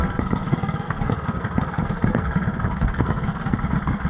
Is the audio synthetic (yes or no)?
yes